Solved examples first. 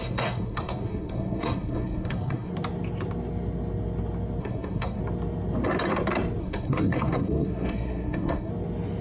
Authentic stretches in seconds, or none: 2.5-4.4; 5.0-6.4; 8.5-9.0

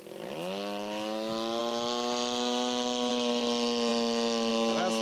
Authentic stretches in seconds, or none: 0.0-5.0

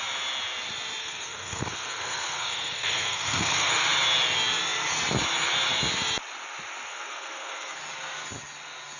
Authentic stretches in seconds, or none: 0.0-1.0; 3.7-6.9; 7.8-9.0

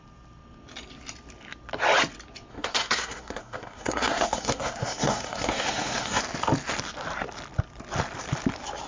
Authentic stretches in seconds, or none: 0.0-2.5; 6.2-8.9